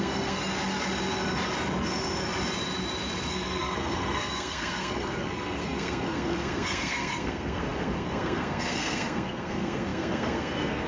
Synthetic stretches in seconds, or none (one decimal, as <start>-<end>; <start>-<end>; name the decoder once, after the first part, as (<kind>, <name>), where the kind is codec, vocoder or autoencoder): 0.0-0.4 (codec, SNAC); 3.3-10.9